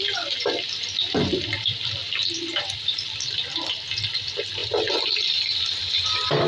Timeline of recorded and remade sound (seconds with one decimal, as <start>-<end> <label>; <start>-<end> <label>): 0.0-4.6 remade; 4.6-5.6 recorded; 5.6-6.5 remade